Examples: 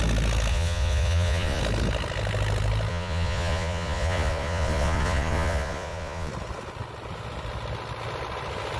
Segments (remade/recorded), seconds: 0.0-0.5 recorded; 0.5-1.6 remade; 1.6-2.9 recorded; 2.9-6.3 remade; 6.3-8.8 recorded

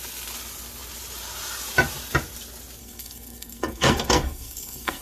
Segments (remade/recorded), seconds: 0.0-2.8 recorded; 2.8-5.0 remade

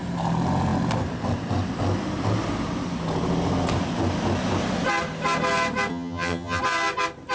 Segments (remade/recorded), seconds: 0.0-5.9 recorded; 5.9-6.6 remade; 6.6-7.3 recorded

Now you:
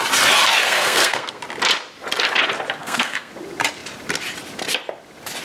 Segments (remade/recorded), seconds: 0.0-0.6 recorded; 0.6-1.4 remade; 1.4-2.8 recorded; 2.8-3.3 remade; 3.3-5.4 recorded